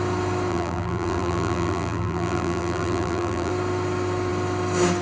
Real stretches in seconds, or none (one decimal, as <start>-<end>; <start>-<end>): 0.0-0.5; 3.5-5.0

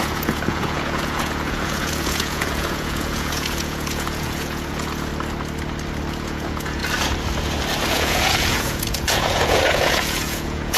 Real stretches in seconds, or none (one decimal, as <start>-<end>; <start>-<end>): 5.1-6.1; 6.8-7.9

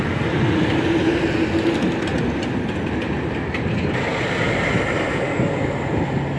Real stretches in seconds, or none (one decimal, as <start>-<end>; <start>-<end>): 0.0-6.4

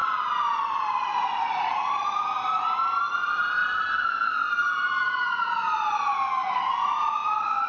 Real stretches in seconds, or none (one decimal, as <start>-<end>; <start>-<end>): 0.0-1.1; 1.9-7.7

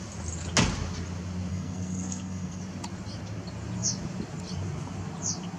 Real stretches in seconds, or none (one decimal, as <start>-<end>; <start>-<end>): 0.0-1.5; 2.6-5.6